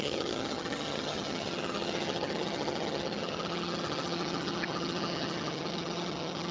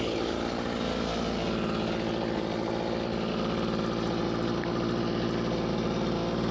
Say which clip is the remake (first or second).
first